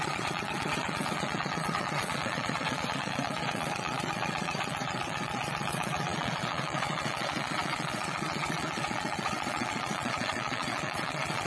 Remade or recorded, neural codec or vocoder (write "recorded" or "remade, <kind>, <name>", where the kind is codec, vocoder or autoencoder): remade, vocoder, Vocos